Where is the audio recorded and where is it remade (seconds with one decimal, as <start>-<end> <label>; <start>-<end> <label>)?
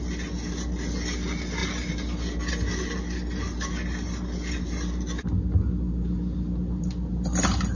0.0-7.7 recorded